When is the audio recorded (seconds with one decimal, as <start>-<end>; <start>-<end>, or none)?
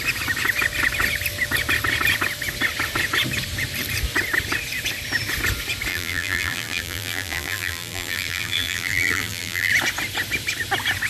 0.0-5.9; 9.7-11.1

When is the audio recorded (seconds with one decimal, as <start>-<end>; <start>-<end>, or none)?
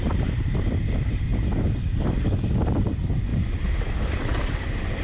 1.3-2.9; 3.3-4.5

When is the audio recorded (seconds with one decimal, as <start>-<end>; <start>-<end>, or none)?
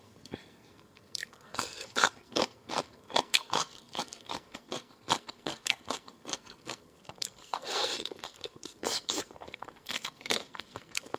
none